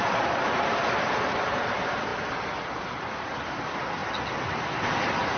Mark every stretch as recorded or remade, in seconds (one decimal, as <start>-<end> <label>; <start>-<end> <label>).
0.0-2.1 remade; 2.1-3.0 recorded; 3.0-4.0 remade; 4.0-4.8 recorded; 4.8-5.4 remade